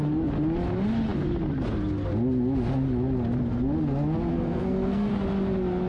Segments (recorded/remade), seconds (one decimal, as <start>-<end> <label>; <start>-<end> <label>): 0.0-4.3 recorded; 4.3-5.1 remade; 5.1-5.9 recorded

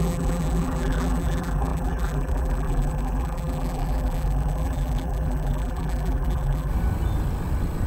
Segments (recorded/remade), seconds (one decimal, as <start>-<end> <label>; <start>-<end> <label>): 0.0-6.7 remade; 6.7-7.9 recorded